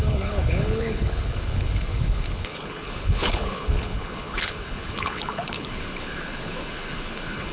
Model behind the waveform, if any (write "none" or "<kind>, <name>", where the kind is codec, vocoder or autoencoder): codec, HILCodec